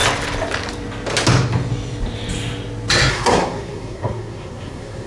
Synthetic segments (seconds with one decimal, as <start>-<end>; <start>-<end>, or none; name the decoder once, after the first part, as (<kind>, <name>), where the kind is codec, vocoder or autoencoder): 3.1-5.1 (codec, SNAC)